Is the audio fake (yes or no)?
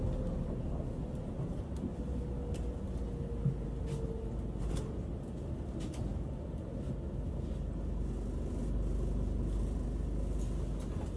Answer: no